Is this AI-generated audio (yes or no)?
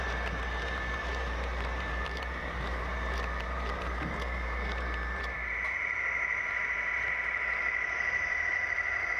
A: yes